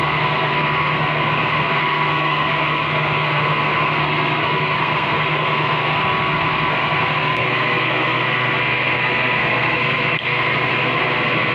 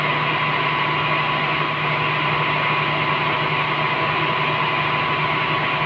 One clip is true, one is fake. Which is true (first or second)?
second